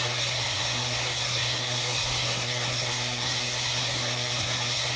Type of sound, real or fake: fake